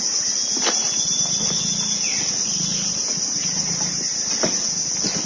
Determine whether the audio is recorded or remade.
recorded